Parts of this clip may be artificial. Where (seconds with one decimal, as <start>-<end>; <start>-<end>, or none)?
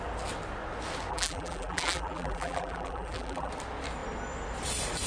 1.1-3.5